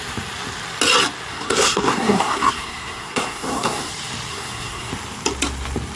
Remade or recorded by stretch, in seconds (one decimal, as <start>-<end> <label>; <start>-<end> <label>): 0.0-1.3 recorded; 1.3-3.9 remade; 3.9-4.3 recorded; 4.3-4.9 remade; 4.9-6.0 recorded